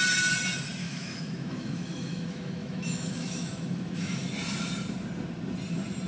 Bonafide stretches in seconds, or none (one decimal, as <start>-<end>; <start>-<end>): 0.0-0.8; 4.3-6.1